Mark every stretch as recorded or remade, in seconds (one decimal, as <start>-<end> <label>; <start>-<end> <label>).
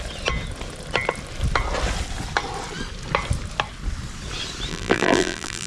0.0-4.7 recorded; 4.7-5.7 remade